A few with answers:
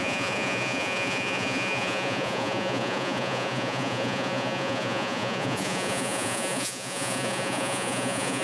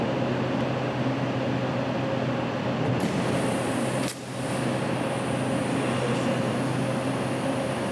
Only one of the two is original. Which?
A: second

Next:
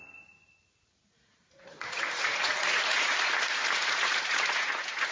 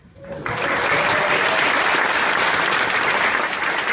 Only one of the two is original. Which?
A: second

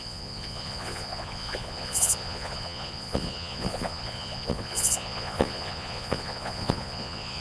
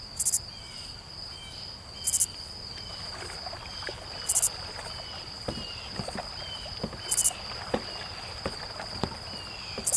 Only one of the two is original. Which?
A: second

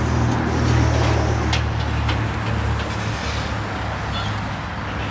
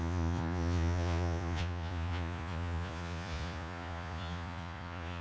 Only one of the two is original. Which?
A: first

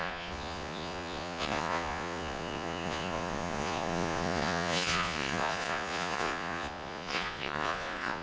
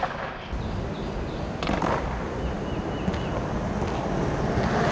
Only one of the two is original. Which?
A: second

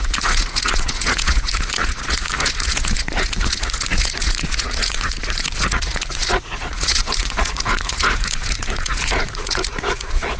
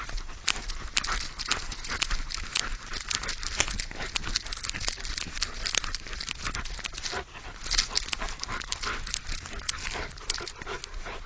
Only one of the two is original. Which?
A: second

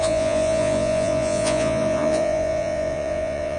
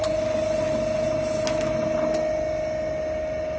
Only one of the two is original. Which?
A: second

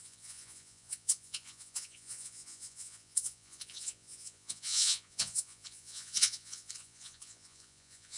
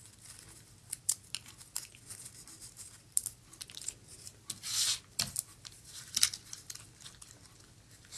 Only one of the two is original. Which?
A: second